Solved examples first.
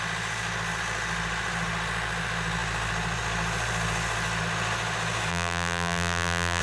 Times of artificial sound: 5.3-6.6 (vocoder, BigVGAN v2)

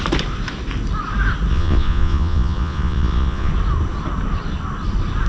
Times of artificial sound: 1.5-3.5 (vocoder, Vocos)